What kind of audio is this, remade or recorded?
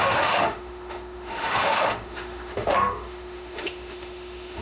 remade